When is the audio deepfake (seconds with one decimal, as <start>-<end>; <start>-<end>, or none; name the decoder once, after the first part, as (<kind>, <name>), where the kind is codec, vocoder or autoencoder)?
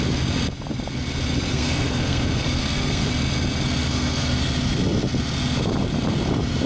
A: 1.5-3.1 (codec, SNAC); 3.8-4.4